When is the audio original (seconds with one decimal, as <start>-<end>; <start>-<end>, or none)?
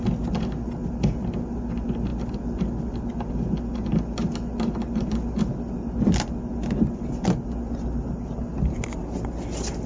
0.0-9.9